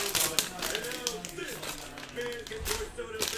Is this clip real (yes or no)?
yes